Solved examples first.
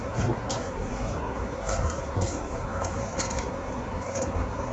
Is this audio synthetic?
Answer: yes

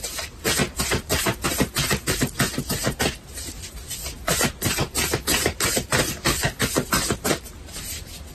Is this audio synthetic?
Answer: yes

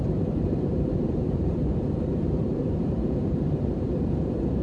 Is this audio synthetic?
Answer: yes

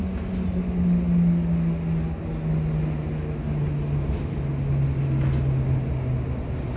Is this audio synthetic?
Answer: no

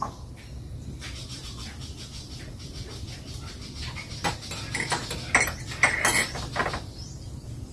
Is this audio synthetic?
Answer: no